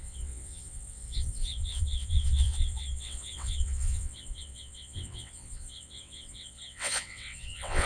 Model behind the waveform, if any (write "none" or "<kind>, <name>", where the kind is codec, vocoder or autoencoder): vocoder, WaveNeXt